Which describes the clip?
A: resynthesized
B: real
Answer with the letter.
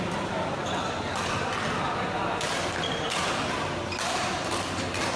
B